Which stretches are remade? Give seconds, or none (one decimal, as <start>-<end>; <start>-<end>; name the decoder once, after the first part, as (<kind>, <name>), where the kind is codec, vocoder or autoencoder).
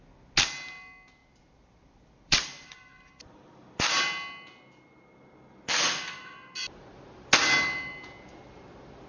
1.2-4.0 (vocoder, BigVGAN v2)